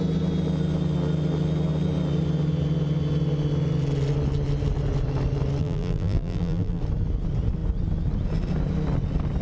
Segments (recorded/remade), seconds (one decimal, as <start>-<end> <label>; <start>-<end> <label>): 0.0-5.6 recorded; 5.6-6.8 remade; 6.8-9.4 recorded